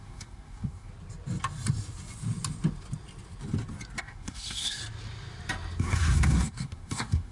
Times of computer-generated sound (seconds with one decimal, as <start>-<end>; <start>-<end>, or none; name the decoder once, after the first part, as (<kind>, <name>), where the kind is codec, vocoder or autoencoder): 0.0-0.9 (codec, SNAC); 4.0-4.8; 5.8-7.3